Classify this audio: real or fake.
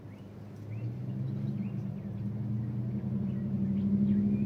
real